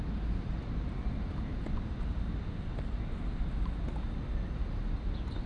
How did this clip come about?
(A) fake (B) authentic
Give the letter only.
B